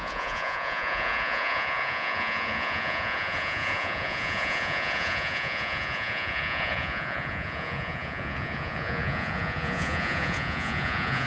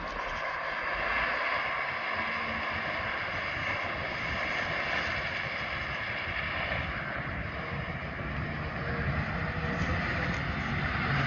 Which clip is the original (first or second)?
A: second